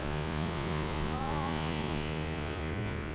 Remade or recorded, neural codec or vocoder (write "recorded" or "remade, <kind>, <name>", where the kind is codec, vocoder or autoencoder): remade, vocoder, Vocos